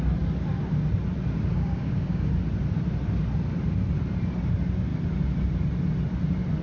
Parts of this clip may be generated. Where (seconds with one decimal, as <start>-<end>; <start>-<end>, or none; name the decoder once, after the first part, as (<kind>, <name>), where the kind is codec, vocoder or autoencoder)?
1.5-2.3 (codec, DAC)